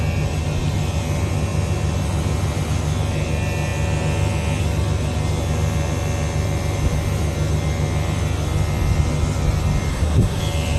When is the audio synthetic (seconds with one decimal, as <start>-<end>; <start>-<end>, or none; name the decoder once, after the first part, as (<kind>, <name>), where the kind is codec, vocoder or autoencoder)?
9.9-10.4 (codec, SNAC)

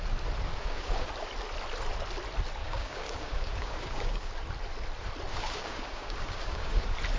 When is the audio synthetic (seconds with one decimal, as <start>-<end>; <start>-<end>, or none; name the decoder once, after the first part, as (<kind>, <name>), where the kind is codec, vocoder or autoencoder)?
0.5-1.1 (codec, DAC); 2.6-4.3; 5.3-6.8

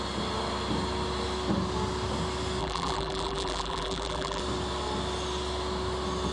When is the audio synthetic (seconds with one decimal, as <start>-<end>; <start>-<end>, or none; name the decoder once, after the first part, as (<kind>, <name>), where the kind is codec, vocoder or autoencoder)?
2.6-4.4 (vocoder, BigVGAN v2)

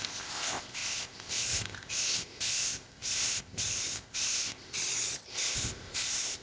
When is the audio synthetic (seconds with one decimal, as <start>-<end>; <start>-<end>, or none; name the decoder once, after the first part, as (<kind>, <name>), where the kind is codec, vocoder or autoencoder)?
0.0-4.7 (codec, ZipCodec); 5.3-6.4

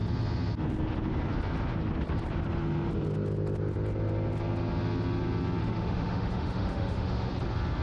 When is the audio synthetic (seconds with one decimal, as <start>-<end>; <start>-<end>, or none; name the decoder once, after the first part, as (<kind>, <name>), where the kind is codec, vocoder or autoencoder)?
5.6-7.3 (autoencoder, DAC-VAE)

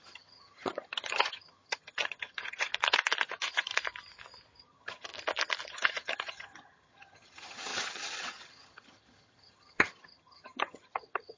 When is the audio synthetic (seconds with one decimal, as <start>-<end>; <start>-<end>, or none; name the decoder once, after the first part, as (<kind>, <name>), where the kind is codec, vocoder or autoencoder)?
0.0-2.7 (vocoder, HiFi-GAN); 3.3-3.7; 4.6-5.1; 5.7-11.4